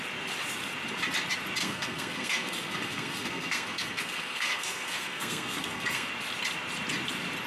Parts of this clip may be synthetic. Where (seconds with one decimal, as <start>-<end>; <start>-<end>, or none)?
1.6-6.1